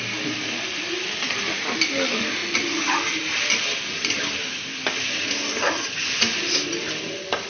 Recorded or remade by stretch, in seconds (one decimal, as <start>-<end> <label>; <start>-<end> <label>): 0.0-7.5 remade